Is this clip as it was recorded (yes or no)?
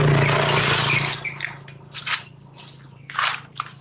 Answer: yes